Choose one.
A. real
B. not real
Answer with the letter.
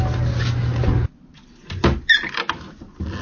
A